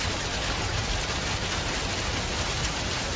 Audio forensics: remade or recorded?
recorded